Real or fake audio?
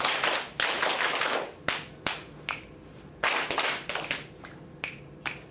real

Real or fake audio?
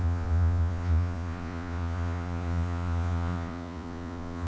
fake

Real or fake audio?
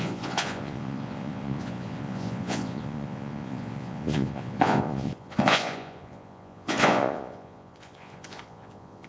fake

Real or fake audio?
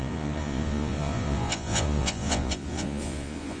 fake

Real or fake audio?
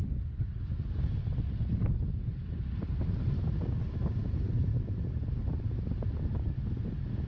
real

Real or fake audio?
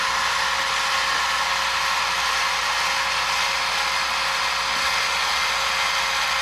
real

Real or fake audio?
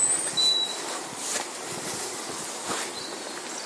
real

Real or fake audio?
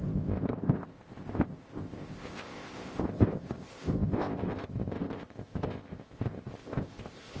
fake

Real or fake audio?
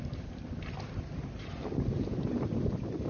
real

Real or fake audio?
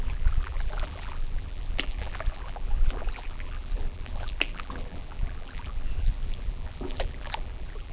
fake